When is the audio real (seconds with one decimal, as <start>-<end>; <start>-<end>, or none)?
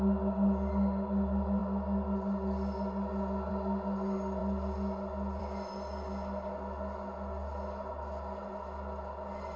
0.0-9.6